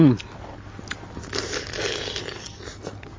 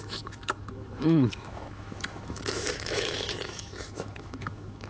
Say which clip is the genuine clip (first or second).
first